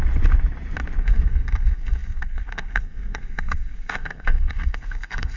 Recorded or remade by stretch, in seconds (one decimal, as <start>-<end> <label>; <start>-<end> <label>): 0.0-1.0 recorded; 1.0-5.4 remade